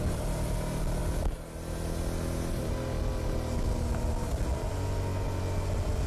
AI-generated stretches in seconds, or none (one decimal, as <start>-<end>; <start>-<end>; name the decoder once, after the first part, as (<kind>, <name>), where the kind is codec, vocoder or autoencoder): none